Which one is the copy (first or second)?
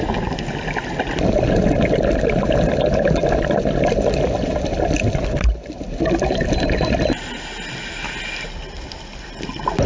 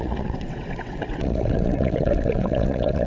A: second